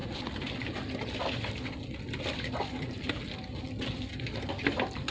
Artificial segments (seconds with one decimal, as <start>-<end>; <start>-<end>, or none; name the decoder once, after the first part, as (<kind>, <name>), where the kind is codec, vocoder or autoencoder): none